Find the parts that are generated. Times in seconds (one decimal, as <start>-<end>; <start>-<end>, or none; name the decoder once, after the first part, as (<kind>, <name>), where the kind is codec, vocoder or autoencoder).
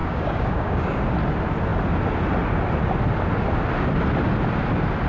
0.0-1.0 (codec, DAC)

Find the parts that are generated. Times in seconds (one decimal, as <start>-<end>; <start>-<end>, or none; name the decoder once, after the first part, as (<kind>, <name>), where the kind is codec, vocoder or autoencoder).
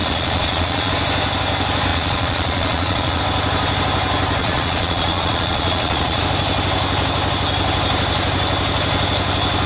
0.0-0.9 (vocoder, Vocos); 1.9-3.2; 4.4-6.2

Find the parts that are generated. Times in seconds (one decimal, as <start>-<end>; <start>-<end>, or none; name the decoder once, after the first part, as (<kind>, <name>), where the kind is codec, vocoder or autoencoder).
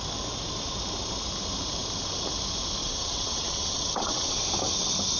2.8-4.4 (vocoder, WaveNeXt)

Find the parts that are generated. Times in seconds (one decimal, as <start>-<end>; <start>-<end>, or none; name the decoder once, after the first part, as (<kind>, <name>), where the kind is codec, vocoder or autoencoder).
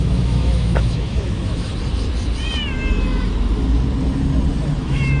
0.0-1.7 (autoencoder, DAC-VAE); 4.8-5.2